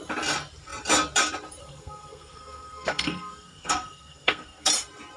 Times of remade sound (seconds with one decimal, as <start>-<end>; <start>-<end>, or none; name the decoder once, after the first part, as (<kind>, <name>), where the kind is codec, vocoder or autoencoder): 1.6-4.7 (codec, SNAC)